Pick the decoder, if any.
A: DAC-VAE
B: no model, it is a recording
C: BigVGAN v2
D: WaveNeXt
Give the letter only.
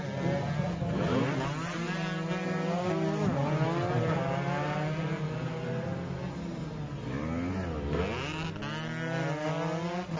B